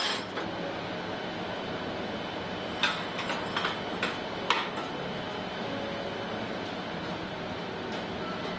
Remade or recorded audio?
recorded